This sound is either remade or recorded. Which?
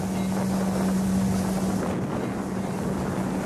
recorded